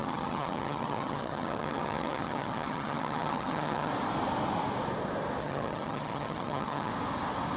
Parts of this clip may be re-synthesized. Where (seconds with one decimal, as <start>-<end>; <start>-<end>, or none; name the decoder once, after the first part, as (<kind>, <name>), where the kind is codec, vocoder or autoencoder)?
0.0-3.9 (vocoder, HiFi-GAN); 5.4-6.9